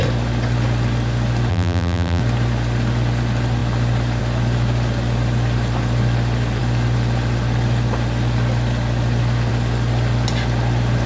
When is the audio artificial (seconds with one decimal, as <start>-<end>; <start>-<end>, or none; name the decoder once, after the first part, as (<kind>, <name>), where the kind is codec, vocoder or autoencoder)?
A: 1.5-2.2 (vocoder, BigVGAN v2)